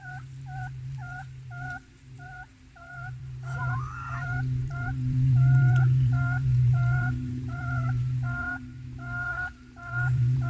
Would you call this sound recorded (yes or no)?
no